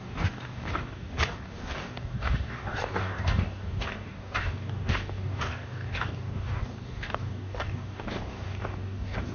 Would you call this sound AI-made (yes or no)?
yes